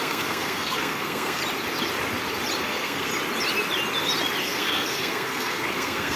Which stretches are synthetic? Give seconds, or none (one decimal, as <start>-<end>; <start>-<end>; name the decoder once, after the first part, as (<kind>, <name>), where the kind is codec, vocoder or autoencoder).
0.0-1.4 (codec, SNAC); 2.6-3.1; 4.4-6.2